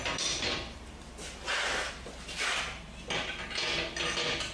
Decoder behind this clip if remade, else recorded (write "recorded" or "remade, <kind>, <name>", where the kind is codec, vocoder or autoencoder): recorded